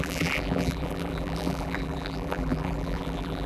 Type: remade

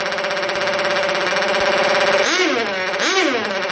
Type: recorded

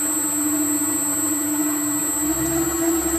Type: recorded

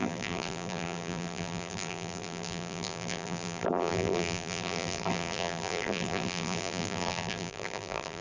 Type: remade